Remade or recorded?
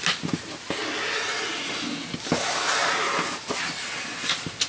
recorded